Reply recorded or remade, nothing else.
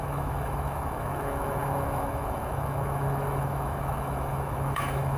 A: remade